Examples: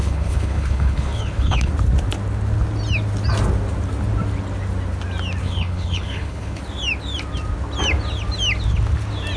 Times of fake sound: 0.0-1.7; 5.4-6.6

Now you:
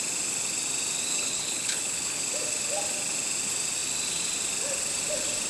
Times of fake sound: 1.1-2.2

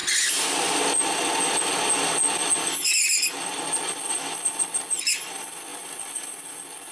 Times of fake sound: none